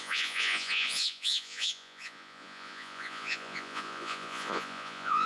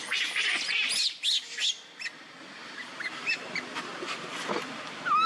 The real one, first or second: second